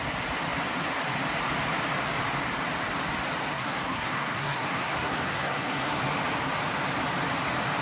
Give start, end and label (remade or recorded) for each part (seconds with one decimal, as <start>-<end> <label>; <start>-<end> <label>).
0.0-3.5 recorded; 3.5-6.0 remade; 6.0-7.8 recorded